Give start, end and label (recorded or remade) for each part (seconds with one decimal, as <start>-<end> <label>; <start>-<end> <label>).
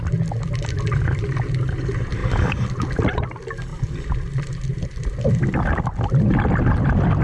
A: 0.0-2.2 recorded; 2.2-3.2 remade; 3.2-3.7 recorded; 3.7-5.3 remade; 5.3-7.2 recorded